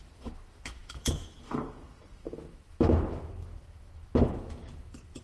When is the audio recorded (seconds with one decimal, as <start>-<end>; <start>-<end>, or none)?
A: none